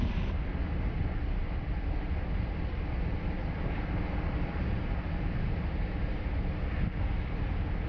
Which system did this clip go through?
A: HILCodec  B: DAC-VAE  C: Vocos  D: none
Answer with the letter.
D